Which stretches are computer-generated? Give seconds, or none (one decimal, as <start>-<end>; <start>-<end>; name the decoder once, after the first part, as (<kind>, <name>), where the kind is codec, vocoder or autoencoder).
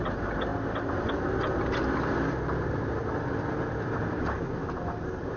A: none